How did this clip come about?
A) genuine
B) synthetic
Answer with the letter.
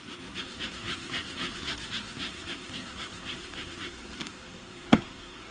B